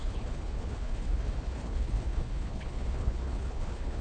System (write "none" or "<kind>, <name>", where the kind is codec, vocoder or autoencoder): codec, HILCodec